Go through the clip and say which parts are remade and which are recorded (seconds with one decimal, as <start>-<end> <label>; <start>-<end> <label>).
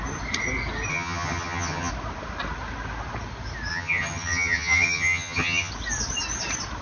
0.0-0.9 recorded; 0.9-1.9 remade; 1.9-3.7 recorded; 3.7-5.7 remade; 5.7-6.8 recorded